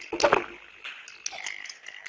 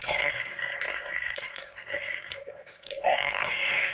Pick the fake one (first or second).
second